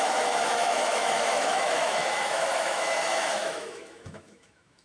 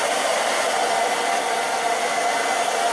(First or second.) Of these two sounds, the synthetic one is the first